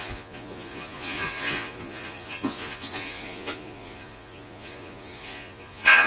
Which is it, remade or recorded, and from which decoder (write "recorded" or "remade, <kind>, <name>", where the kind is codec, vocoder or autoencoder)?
remade, vocoder, Vocos